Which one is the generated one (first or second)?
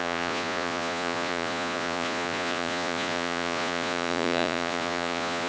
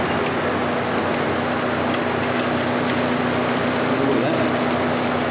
first